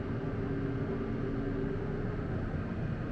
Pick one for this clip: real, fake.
real